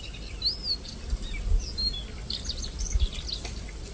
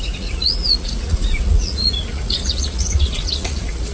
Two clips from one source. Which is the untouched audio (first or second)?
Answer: first